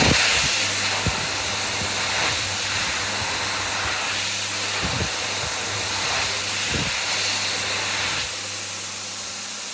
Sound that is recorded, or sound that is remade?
recorded